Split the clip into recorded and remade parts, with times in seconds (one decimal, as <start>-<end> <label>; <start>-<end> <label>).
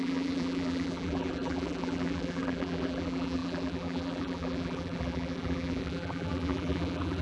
0.0-7.2 remade